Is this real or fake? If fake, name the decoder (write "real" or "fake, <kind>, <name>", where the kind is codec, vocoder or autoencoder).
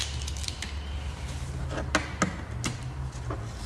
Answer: real